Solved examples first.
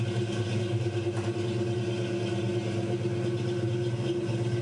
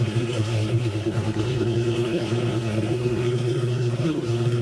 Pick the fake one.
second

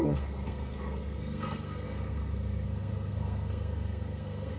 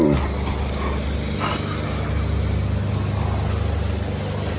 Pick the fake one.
first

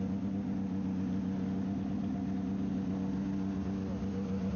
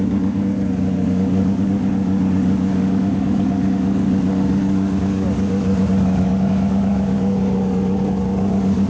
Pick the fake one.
second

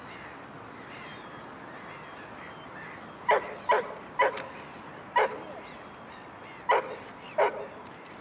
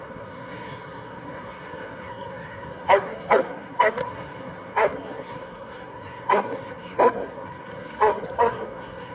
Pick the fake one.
second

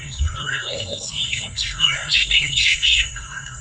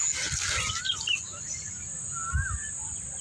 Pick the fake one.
first